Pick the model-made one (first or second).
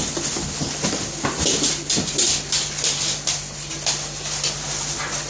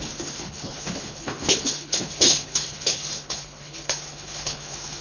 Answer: second